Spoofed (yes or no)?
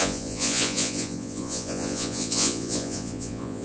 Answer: yes